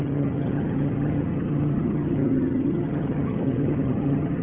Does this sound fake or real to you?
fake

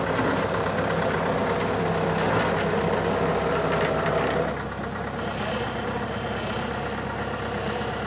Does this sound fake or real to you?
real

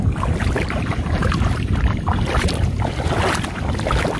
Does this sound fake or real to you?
real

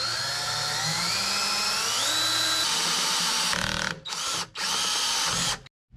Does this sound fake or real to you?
real